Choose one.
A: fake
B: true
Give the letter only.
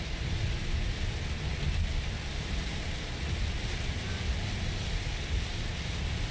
A